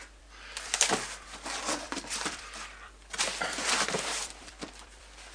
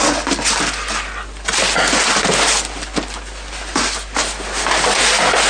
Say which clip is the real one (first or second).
second